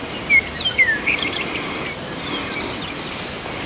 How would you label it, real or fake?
real